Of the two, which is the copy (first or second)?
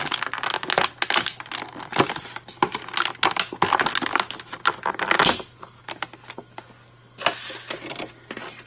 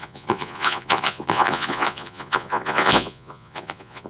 second